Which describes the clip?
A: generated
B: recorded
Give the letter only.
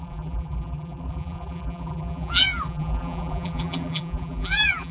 A